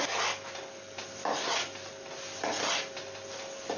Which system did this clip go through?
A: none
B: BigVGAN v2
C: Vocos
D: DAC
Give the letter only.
B